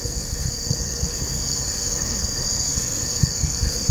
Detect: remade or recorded remade